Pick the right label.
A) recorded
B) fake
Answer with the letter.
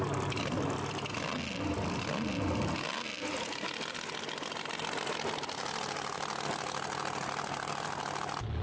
A